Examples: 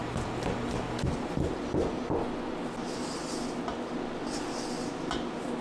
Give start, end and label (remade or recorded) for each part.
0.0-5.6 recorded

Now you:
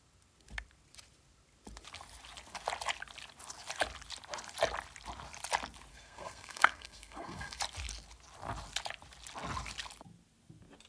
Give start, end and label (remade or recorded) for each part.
0.0-5.9 recorded; 5.9-7.6 remade; 7.6-10.9 recorded

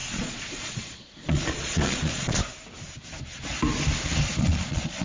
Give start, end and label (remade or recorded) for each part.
0.0-2.4 remade; 2.4-4.4 recorded; 4.4-5.0 remade

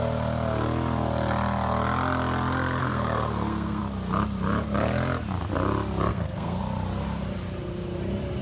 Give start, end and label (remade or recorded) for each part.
0.0-2.8 recorded; 2.8-3.8 remade; 3.8-6.1 recorded; 6.1-6.6 remade; 6.6-8.4 recorded

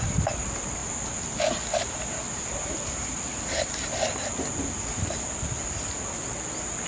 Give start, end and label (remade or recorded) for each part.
0.0-6.9 recorded

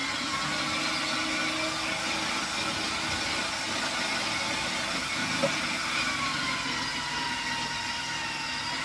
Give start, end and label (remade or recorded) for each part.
0.0-8.8 recorded

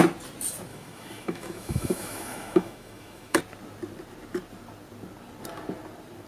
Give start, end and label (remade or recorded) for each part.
0.0-0.7 recorded; 0.7-3.4 remade; 3.4-6.3 recorded